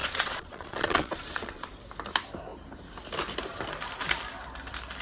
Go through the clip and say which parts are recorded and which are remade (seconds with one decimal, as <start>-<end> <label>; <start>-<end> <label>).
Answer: 0.0-1.7 remade; 1.7-5.0 recorded